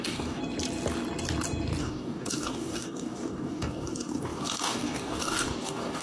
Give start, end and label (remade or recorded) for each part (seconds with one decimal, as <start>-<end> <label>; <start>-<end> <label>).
0.0-0.4 remade; 0.4-1.8 recorded; 1.8-6.0 remade